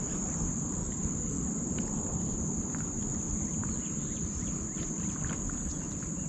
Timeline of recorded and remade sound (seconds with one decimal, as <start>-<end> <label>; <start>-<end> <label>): 0.0-0.8 recorded; 0.8-1.4 remade; 1.4-6.3 recorded